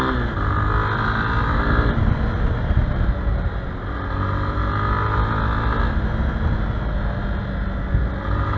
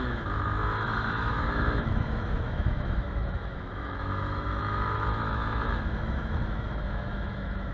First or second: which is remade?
second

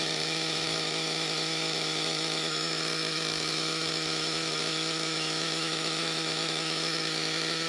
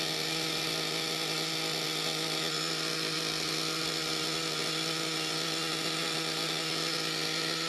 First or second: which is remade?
first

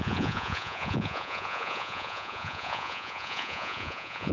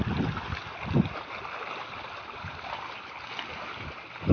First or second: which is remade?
first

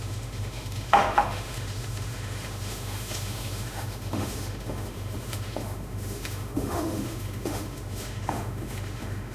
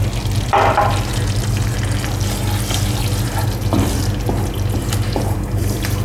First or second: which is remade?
first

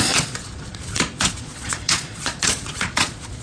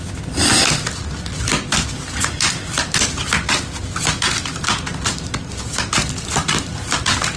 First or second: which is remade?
first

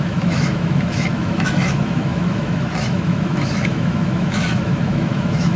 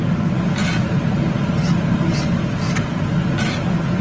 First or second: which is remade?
first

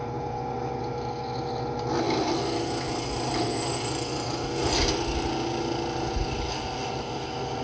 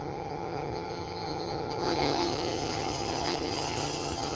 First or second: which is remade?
second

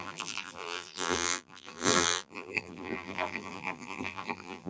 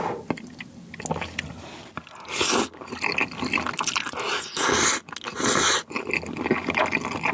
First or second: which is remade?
first